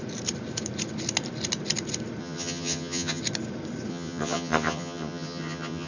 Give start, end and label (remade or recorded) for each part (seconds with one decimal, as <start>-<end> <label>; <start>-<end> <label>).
0.0-2.2 recorded; 2.2-3.2 remade; 3.2-3.9 recorded; 3.9-5.9 remade